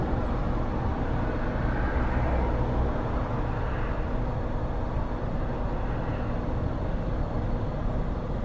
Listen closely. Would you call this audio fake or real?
real